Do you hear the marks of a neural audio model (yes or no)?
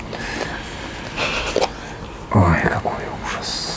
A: no